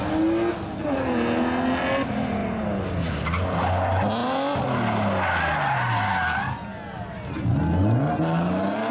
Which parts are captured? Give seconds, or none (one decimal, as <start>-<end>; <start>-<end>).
0.0-8.9